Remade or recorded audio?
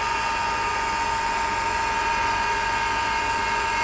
remade